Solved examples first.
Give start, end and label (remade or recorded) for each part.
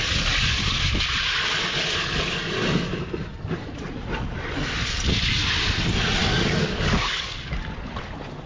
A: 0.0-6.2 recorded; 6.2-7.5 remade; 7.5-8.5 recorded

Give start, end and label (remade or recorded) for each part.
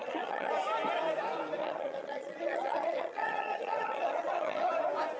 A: 0.0-0.5 remade; 0.5-1.6 recorded; 1.6-4.7 remade; 4.7-5.2 recorded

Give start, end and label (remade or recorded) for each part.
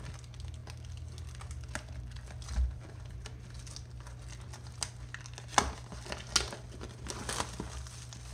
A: 0.0-8.3 recorded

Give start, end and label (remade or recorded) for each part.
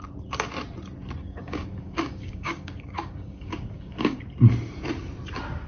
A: 0.0-1.2 recorded; 1.2-4.2 remade; 4.2-5.7 recorded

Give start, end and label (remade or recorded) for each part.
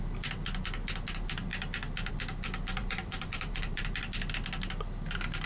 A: 0.0-2.8 recorded; 2.8-3.8 remade; 3.8-5.5 recorded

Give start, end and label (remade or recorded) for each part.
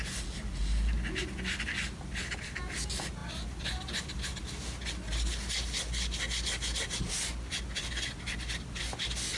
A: 0.0-9.4 recorded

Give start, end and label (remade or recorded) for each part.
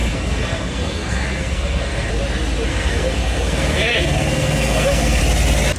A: 0.0-2.1 remade; 2.1-2.7 recorded; 2.7-5.2 remade; 5.2-5.8 recorded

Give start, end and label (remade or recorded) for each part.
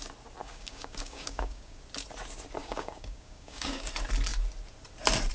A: 0.0-0.4 recorded; 0.4-1.8 remade; 1.8-2.6 recorded; 2.6-3.9 remade; 3.9-5.3 recorded